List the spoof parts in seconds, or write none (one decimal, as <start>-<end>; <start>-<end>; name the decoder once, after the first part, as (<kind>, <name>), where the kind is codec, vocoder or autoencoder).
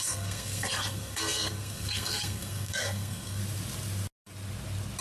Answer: 0.0-3.4 (codec, SNAC)